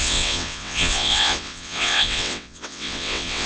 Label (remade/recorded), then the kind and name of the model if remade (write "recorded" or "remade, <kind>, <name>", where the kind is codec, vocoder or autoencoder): remade, vocoder, WaveNeXt